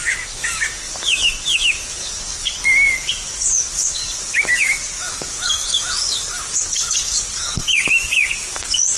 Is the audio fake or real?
fake